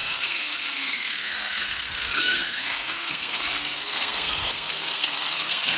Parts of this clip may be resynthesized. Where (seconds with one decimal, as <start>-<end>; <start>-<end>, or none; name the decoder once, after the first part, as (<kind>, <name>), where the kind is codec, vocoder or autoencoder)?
0.0-5.8 (codec, SNAC)